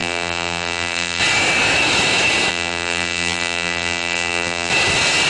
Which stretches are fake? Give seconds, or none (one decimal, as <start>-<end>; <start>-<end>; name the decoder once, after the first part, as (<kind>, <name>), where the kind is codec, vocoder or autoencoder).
0.0-1.2 (vocoder, BigVGAN v2); 2.5-4.7